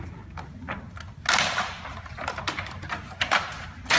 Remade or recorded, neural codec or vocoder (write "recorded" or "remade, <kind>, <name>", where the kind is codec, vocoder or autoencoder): remade, vocoder, BigVGAN v2